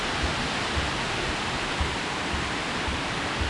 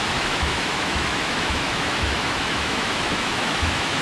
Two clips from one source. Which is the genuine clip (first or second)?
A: first